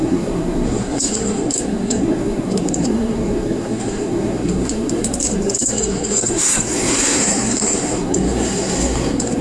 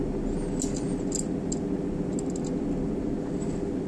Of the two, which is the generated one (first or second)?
first